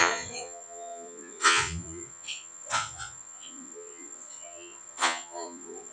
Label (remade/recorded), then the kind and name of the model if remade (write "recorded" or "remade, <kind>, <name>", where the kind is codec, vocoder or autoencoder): remade, vocoder, Vocos